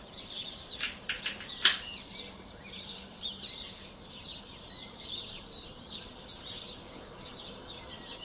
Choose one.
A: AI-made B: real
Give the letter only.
A